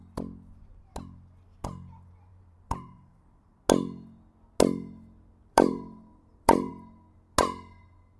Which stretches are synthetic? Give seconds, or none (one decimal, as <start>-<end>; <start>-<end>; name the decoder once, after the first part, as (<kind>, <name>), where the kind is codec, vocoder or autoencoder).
2.3-3.6 (vocoder, BigVGAN v2); 5.4-6.7